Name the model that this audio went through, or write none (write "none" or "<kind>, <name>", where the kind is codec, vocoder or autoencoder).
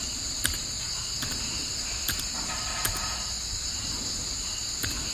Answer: none